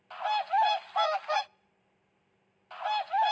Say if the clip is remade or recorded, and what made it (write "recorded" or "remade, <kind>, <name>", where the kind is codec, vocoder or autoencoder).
recorded